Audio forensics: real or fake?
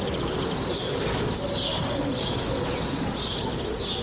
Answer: real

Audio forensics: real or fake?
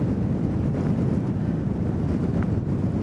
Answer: real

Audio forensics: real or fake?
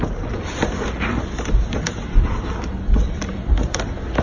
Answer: real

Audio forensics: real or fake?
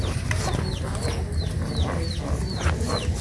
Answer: real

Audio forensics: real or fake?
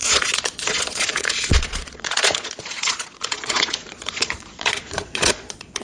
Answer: fake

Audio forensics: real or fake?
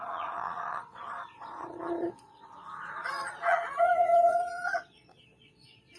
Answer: fake